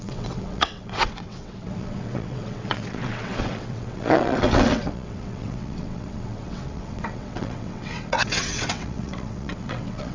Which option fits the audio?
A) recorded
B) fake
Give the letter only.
B